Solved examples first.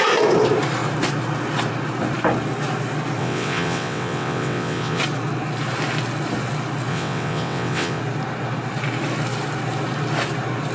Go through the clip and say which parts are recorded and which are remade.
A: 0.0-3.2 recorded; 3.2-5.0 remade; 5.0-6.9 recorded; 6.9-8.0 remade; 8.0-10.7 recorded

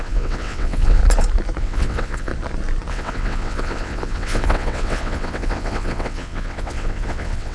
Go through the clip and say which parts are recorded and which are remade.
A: 0.0-1.0 remade; 1.0-1.6 recorded; 1.6-2.3 remade; 2.3-2.9 recorded; 2.9-7.5 remade

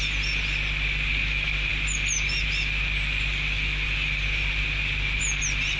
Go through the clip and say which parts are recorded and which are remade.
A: 0.0-5.8 recorded

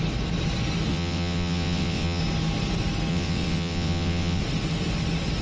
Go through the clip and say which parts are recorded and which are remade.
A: 0.0-0.9 recorded; 0.9-2.2 remade; 2.2-3.1 recorded; 3.1-4.4 remade; 4.4-5.4 recorded

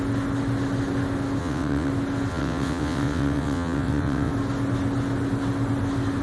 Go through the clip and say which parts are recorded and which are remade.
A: 0.0-1.4 recorded; 1.4-1.9 remade; 1.9-2.3 recorded; 2.3-4.3 remade; 4.3-6.2 recorded